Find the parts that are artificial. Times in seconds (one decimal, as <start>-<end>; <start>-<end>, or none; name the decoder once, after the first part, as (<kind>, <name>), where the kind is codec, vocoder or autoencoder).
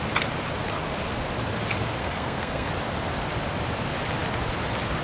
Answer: 2.0-2.7 (codec, SNAC)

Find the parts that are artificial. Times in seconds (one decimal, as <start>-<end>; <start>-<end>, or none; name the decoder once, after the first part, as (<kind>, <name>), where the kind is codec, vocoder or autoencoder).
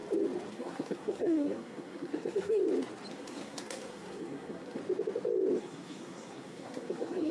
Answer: 0.5-2.6 (codec, SNAC); 3.1-4.8; 5.6-7.3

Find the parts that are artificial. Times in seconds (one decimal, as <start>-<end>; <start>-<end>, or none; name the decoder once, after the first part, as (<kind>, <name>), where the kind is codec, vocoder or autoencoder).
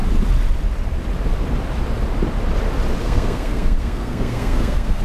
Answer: 3.0-5.0 (codec, SNAC)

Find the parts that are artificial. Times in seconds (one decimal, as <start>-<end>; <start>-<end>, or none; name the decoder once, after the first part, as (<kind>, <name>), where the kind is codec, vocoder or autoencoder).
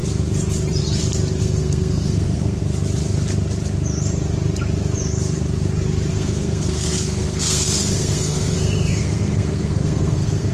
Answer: 1.4-2.6 (codec, SNAC); 6.1-10.5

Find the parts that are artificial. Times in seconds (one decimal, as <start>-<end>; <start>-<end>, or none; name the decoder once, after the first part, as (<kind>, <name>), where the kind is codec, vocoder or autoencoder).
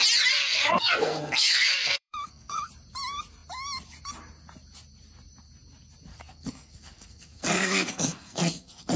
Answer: 0.4-2.7 (codec, SNAC); 6.1-9.0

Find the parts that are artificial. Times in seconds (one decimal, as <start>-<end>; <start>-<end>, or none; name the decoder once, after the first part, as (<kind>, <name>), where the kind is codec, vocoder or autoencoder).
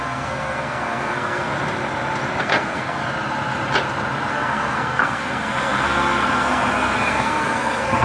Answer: 0.0-1.5 (codec, SNAC); 2.4-3.0; 4.3-8.0